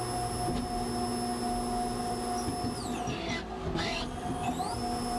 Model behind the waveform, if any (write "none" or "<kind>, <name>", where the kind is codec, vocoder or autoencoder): none